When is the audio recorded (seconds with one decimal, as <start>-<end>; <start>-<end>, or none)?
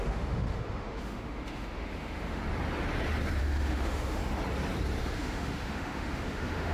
2.4-3.4; 4.2-5.0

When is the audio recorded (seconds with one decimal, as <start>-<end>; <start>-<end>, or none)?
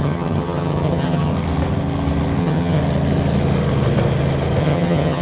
1.3-2.4; 2.8-4.6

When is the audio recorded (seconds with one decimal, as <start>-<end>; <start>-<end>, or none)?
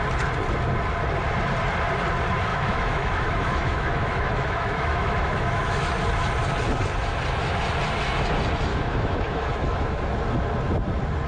0.0-2.5; 5.9-8.7; 10.0-11.3